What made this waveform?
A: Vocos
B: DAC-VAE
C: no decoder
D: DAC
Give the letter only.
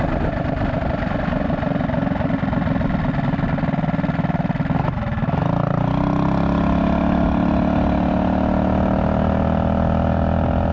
C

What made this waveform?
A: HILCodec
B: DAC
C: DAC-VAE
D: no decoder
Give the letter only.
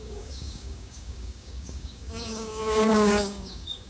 B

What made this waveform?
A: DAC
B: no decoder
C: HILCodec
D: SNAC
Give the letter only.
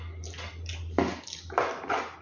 B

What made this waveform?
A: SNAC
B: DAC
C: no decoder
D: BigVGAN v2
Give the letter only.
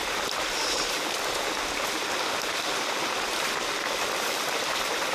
C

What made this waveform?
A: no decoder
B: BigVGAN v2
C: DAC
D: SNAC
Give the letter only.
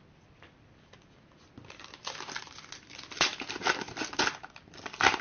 A